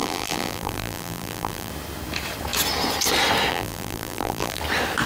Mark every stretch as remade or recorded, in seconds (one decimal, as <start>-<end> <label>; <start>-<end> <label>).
0.0-1.7 remade; 1.7-3.5 recorded; 3.5-4.6 remade; 4.6-5.1 recorded